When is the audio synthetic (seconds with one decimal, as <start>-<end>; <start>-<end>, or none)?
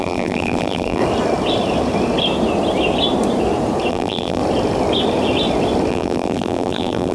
0.0-1.0; 3.9-4.4; 5.9-7.1